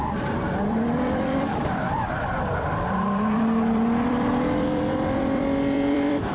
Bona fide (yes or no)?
no